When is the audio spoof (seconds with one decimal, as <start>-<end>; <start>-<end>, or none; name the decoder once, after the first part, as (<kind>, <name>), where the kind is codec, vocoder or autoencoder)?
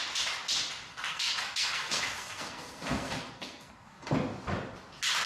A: 0.9-4.1 (codec, SNAC)